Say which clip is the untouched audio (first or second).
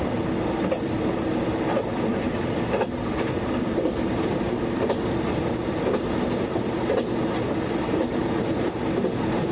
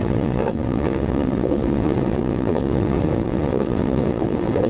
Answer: first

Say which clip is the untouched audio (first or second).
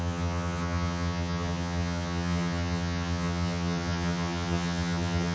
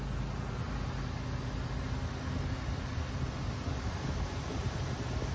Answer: second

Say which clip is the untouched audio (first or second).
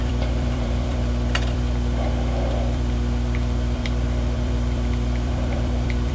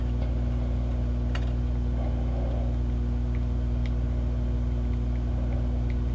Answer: second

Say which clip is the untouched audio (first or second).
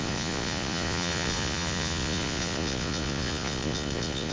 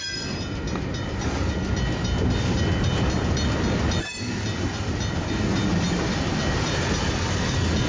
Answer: second